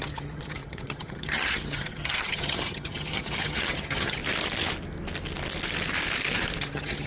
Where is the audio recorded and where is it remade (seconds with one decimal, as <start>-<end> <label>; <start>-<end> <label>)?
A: 0.0-4.2 remade; 4.2-6.6 recorded; 6.6-7.1 remade

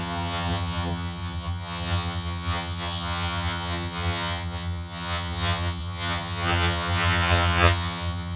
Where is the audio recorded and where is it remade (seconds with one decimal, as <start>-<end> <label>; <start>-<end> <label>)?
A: 0.0-8.4 remade

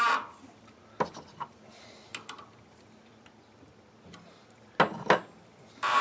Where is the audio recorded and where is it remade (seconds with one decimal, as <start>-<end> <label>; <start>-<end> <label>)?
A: 0.0-6.0 recorded

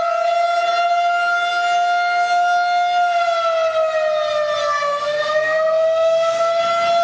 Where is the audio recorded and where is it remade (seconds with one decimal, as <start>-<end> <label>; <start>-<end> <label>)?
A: 0.0-4.6 recorded; 4.6-6.6 remade; 6.6-7.0 recorded

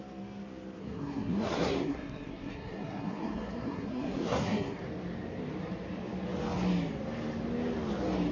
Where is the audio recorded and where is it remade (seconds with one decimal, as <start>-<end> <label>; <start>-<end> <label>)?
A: 0.0-0.8 recorded; 0.8-4.8 remade; 4.8-8.3 recorded

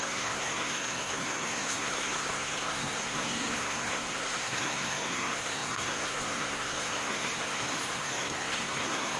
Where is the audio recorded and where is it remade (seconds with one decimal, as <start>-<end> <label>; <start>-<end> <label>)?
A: 0.0-9.2 remade

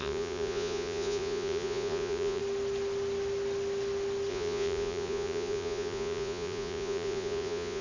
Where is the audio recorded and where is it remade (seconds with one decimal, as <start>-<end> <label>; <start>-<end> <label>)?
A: 0.0-2.4 remade; 2.4-4.3 recorded; 4.3-7.8 remade